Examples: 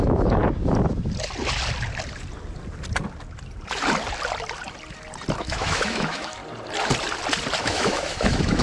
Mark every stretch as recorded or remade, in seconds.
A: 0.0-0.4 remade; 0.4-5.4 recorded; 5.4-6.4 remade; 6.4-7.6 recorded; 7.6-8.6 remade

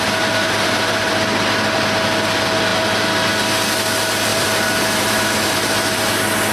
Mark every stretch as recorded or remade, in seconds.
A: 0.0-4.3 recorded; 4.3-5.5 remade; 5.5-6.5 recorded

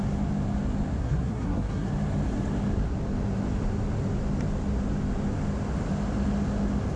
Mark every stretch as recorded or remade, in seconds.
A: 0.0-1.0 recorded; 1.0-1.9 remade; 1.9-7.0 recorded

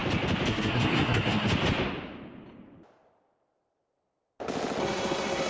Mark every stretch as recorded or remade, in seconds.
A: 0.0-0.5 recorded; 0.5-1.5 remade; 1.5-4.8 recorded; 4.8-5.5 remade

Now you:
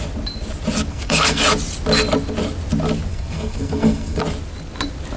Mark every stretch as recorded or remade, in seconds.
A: 0.0-0.9 recorded; 0.9-1.4 remade; 1.4-3.1 recorded; 3.1-4.2 remade; 4.2-5.2 recorded

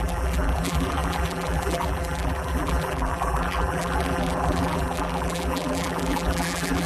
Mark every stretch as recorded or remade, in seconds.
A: 0.0-6.9 remade

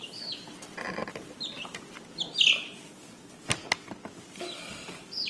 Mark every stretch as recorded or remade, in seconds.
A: 0.0-5.3 recorded